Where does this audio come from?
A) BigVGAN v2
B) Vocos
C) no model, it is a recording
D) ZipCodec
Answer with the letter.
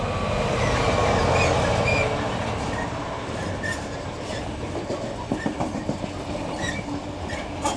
C